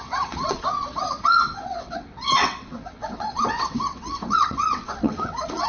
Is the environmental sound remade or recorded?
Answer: remade